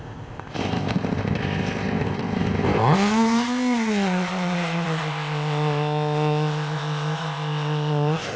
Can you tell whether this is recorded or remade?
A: remade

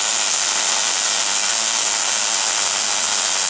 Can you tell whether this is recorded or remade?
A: recorded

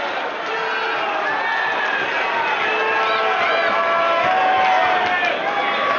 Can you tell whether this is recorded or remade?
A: recorded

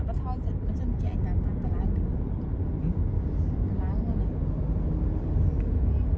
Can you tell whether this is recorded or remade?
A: recorded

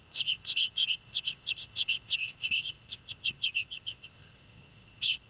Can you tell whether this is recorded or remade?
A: remade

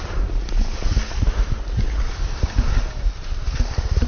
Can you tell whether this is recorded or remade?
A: recorded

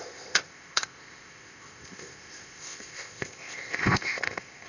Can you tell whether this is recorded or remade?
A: remade